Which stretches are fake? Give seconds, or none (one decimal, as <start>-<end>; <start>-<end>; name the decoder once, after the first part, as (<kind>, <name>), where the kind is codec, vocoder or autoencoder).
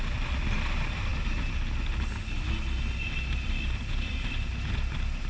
none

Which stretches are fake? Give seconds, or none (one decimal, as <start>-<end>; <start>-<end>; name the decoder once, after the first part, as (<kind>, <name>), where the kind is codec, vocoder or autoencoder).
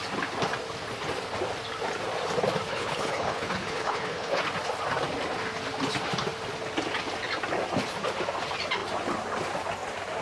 2.7-4.4 (codec, HILCodec)